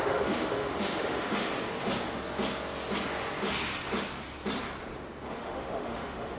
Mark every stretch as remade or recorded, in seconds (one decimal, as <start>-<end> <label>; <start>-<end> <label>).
0.0-1.5 remade; 1.5-5.3 recorded; 5.3-6.4 remade